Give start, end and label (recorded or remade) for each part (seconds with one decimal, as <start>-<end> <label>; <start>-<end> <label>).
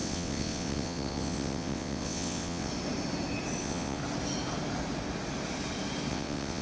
0.0-2.7 remade; 2.7-3.6 recorded; 3.6-4.0 remade; 4.0-6.1 recorded; 6.1-6.6 remade